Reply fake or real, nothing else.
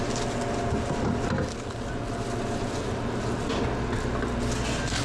real